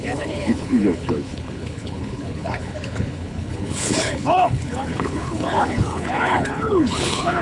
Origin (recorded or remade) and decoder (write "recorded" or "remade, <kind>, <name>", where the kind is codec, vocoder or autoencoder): remade, codec, HILCodec